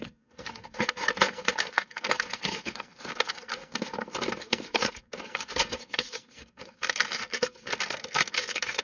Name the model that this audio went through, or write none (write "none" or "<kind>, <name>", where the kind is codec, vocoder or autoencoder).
codec, SNAC